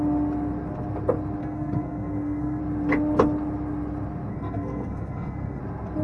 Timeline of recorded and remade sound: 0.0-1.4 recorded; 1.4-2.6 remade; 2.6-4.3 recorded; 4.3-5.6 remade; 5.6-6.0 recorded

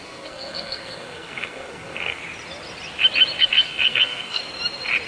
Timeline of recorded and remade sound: 0.0-2.2 remade; 2.2-3.4 recorded; 3.4-4.4 remade; 4.4-5.1 recorded

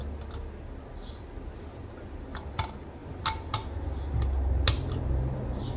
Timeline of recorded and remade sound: 0.0-5.8 recorded

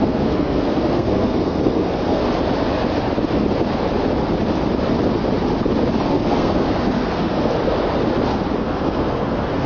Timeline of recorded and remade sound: 0.0-2.2 remade; 2.2-6.0 recorded; 6.0-7.5 remade; 7.5-8.6 recorded; 8.6-9.7 remade

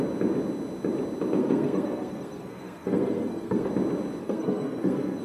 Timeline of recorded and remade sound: 0.0-1.4 recorded; 1.4-3.7 remade; 3.7-4.2 recorded; 4.2-5.2 remade

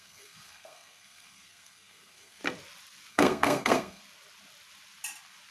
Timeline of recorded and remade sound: 0.0-2.4 remade; 2.4-3.1 recorded; 3.1-4.0 remade; 4.0-5.5 recorded

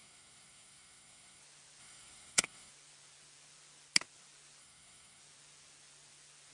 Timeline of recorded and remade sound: 0.0-1.4 remade; 1.4-1.8 recorded; 1.8-2.7 remade; 2.7-4.6 recorded; 4.6-5.2 remade; 5.2-6.5 recorded